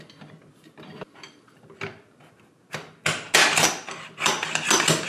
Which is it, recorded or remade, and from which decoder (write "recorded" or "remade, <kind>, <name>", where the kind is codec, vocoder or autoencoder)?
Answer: recorded